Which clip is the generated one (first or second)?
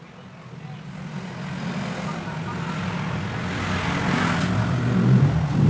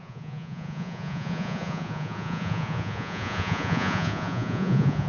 second